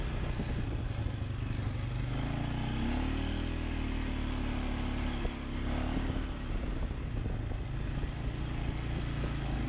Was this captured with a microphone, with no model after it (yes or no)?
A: yes